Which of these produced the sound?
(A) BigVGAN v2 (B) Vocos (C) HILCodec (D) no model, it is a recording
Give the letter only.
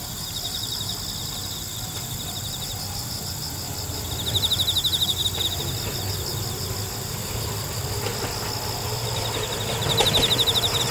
D